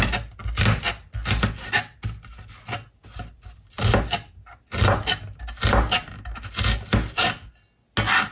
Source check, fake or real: real